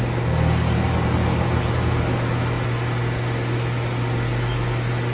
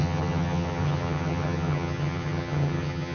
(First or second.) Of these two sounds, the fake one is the second